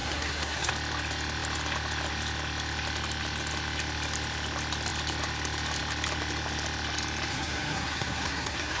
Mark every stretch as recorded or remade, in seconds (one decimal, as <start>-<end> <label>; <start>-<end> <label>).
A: 0.0-0.7 remade; 0.7-7.3 recorded; 7.3-8.8 remade